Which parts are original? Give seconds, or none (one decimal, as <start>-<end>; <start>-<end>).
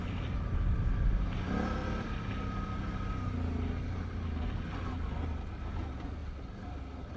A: 1.4-1.8; 3.9-6.2; 6.8-7.2